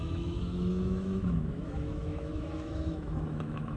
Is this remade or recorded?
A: remade